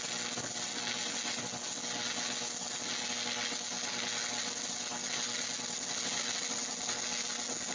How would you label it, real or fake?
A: real